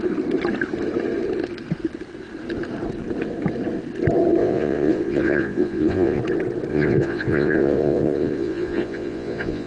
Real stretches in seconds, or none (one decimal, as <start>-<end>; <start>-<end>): 0.0-4.4; 6.2-6.7